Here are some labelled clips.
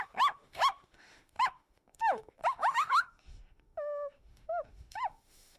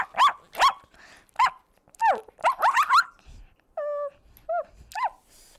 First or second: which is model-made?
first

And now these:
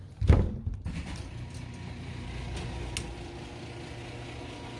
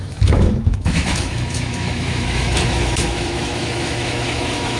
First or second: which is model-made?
second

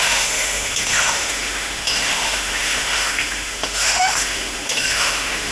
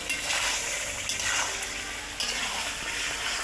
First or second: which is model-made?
first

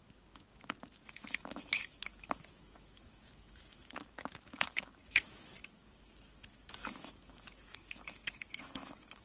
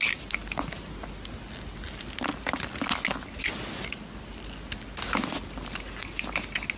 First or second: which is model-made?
first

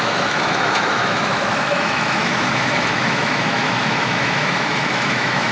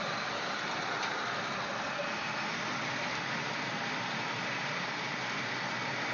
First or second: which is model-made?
first